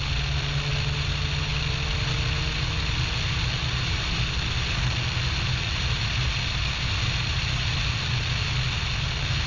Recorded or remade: recorded